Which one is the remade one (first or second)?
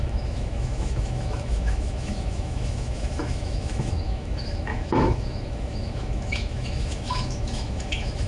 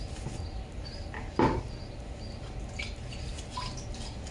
first